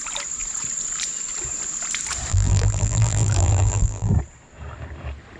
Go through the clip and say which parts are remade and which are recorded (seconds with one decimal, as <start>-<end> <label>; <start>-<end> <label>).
0.0-2.3 recorded; 2.3-4.1 remade; 4.1-5.4 recorded